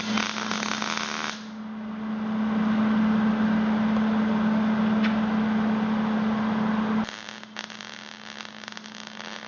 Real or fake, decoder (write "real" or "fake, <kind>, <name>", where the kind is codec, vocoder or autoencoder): real